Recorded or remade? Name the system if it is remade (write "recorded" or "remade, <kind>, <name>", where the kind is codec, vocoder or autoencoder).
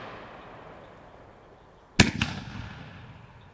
recorded